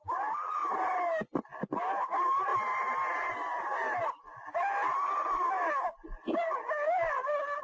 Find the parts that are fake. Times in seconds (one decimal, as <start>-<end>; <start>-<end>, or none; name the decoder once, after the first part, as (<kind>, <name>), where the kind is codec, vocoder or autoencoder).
none